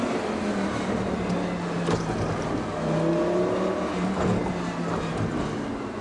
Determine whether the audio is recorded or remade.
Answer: recorded